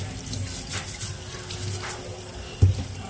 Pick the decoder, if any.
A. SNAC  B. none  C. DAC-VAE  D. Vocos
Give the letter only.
B